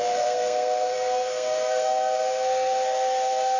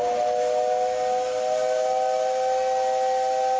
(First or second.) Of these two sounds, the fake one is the first